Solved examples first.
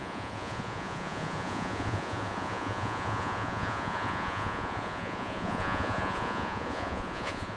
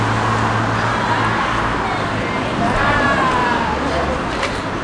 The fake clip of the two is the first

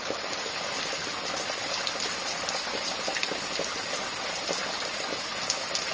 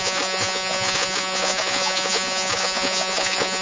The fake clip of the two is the second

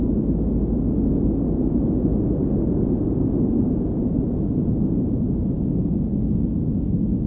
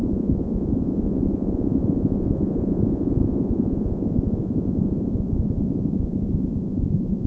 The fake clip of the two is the second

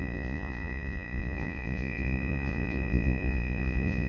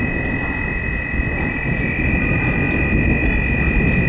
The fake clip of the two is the first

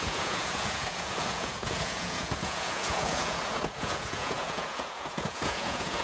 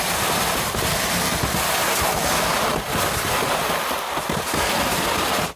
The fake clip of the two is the first